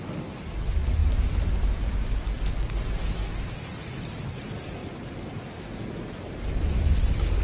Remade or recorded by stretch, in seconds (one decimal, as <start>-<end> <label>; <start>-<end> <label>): 0.0-7.4 recorded